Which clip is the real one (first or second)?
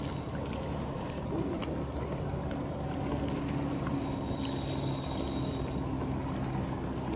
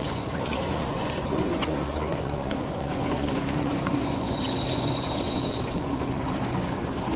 first